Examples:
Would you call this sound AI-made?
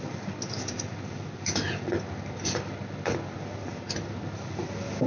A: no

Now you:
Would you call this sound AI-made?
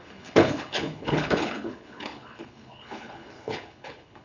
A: yes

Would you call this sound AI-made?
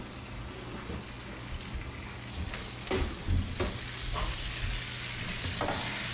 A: no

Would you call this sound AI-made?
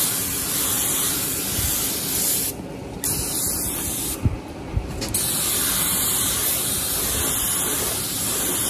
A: no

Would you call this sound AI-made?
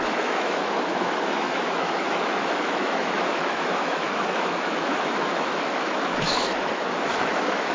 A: yes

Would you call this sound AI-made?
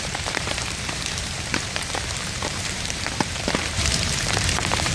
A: yes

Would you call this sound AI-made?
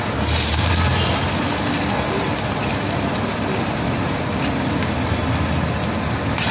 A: no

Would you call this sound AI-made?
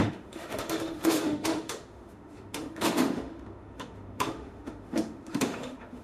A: yes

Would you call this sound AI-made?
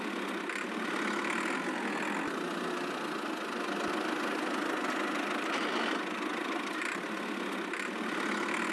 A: no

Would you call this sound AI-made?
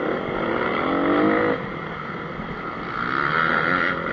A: no